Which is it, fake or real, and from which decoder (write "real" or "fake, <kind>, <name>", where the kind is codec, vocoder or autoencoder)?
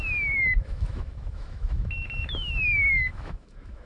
fake, autoencoder, DAC-VAE